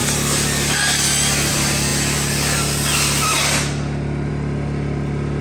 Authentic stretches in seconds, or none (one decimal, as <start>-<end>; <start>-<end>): 0.0-5.4